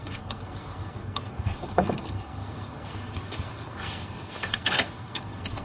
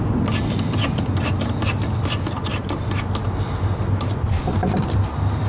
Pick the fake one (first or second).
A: first